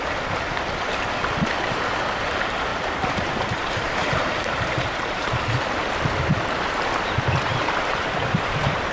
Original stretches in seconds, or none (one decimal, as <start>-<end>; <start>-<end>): 0.0-2.7; 5.3-7.5